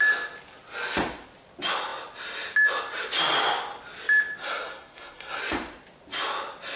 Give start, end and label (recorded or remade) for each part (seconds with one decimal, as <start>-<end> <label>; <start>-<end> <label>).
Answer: 0.0-4.4 recorded; 4.4-5.4 remade; 5.4-6.8 recorded